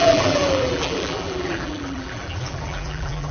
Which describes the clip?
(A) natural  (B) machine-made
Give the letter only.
B